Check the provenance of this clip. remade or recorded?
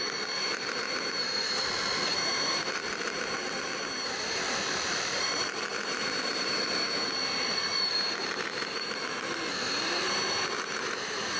remade